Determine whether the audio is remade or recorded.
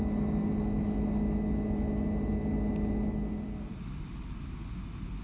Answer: recorded